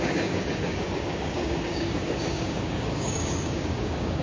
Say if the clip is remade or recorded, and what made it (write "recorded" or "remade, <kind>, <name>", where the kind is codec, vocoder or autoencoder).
remade, codec, DAC